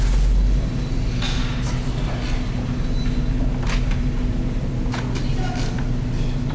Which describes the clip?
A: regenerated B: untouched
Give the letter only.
B